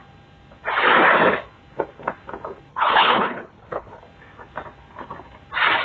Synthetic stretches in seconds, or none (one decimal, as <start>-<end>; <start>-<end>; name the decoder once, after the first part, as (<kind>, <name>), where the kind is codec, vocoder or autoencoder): 2.7-4.0 (codec, HILCodec)